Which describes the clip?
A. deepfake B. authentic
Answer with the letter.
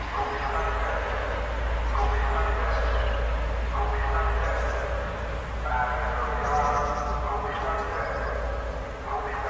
B